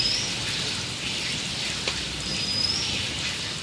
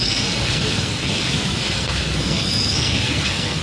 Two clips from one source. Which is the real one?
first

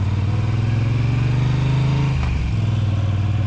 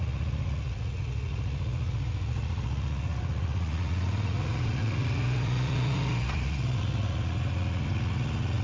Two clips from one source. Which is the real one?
first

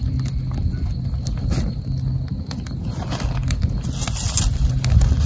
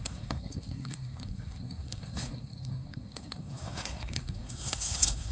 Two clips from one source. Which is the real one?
first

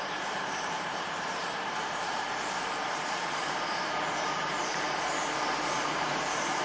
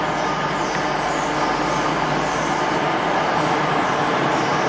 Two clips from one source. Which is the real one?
second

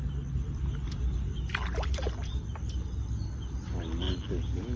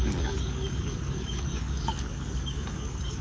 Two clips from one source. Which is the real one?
first